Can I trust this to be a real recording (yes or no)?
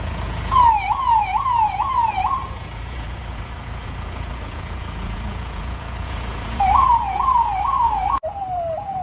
no